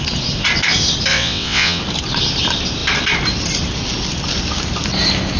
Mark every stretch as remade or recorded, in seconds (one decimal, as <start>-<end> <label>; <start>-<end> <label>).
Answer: 0.0-1.1 recorded; 1.1-1.8 remade; 1.8-5.4 recorded